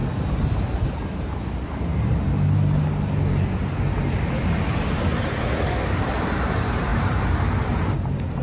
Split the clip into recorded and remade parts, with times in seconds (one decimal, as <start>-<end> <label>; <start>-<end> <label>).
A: 0.0-0.9 recorded; 0.9-1.9 remade; 1.9-4.4 recorded; 4.4-8.4 remade